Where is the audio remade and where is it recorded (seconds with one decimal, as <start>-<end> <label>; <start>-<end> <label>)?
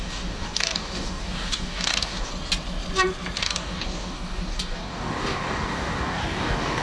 0.0-2.3 remade; 2.3-3.4 recorded; 3.4-6.8 remade